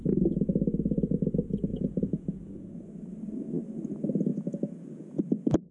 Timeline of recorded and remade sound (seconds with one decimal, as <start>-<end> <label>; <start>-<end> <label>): 0.0-1.7 recorded; 1.7-2.8 remade; 2.8-4.3 recorded; 4.3-5.2 remade; 5.2-5.7 recorded